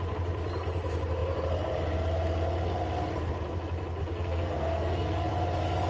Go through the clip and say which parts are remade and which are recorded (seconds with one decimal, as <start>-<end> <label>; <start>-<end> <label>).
0.0-4.0 recorded; 4.0-5.3 remade; 5.3-5.9 recorded